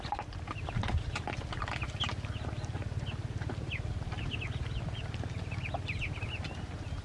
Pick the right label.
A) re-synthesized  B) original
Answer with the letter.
B